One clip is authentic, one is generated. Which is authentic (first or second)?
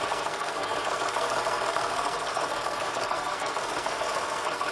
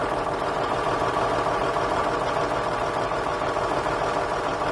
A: second